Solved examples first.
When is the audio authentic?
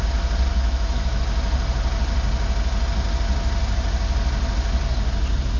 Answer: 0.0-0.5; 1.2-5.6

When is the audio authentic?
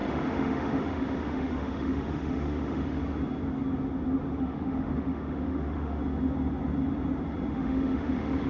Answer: 3.0-4.4; 6.0-7.5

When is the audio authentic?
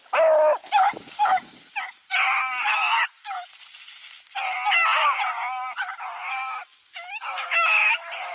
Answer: 0.0-0.6; 1.8-2.6; 3.5-6.2; 7.9-8.3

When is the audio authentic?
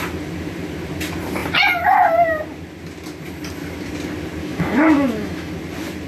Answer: 0.0-4.4; 5.5-6.1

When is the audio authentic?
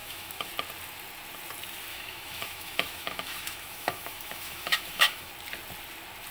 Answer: 0.5-1.9; 5.3-6.3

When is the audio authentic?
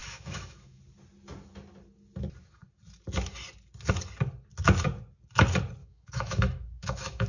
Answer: 0.8-5.8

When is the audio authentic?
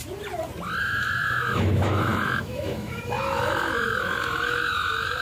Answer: 0.0-0.8